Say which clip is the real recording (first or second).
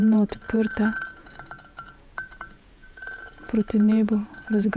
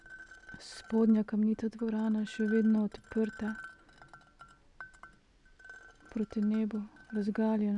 second